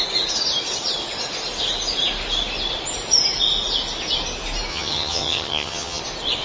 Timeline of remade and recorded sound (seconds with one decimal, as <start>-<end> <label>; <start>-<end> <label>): 0.0-4.7 recorded; 4.7-6.0 remade; 6.0-6.4 recorded